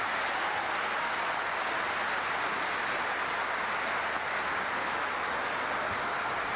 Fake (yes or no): no